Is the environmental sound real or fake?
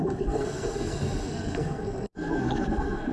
fake